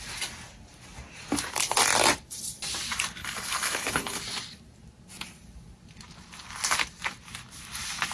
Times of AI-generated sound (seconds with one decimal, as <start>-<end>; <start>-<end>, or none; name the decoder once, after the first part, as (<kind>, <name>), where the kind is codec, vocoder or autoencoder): 3.2-4.2 (codec, HILCodec)